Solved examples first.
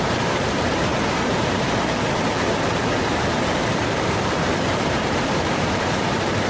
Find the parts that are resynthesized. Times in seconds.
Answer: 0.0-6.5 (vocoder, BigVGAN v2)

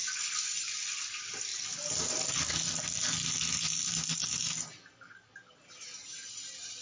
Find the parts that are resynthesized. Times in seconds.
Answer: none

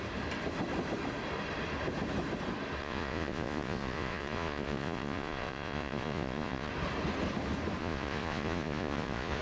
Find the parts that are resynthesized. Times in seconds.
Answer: 2.8-6.7 (vocoder, Vocos); 7.8-9.4

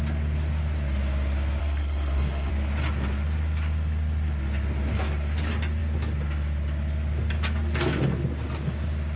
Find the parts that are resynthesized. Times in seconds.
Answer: 1.6-2.5 (codec, SNAC)

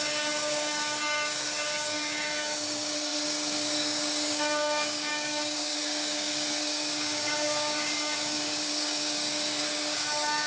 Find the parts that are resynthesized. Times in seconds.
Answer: 0.0-10.5 (codec, DAC)

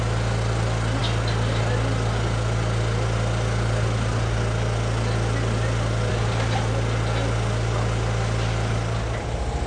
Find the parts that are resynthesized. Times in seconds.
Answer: none